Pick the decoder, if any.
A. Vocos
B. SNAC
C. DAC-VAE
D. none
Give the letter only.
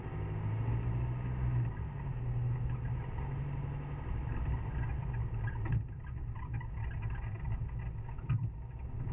D